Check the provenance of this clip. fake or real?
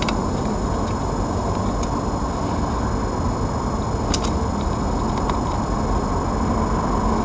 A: real